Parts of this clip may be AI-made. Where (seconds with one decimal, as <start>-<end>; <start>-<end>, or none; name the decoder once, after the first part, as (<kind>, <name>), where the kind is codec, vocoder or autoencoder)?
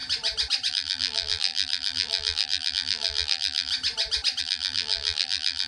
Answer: 0.7-3.7 (vocoder, BigVGAN v2); 4.4-5.7